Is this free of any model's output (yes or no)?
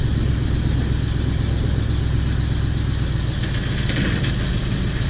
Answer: yes